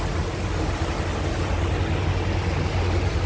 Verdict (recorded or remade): recorded